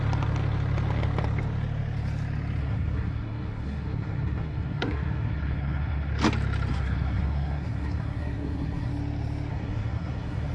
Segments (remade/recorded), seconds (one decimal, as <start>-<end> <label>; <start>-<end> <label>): 0.0-2.6 recorded; 2.6-6.1 remade; 6.1-6.7 recorded; 6.7-8.9 remade; 8.9-9.5 recorded; 9.5-10.5 remade